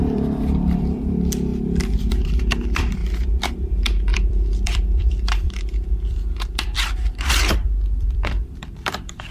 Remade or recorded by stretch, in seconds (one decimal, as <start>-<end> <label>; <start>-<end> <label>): 0.0-1.5 remade; 1.5-2.1 recorded; 2.1-3.0 remade; 3.0-3.7 recorded; 3.7-9.3 remade